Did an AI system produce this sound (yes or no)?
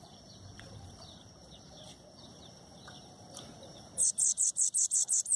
yes